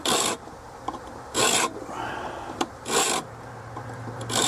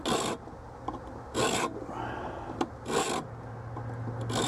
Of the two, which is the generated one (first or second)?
first